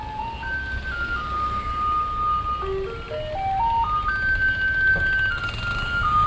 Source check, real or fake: real